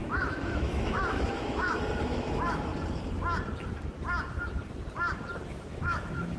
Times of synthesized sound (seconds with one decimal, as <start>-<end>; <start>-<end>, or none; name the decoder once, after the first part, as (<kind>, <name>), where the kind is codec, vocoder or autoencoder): 0.0-2.7 (autoencoder, DAC-VAE); 5.5-6.4